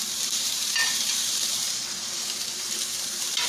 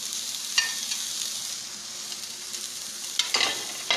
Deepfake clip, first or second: first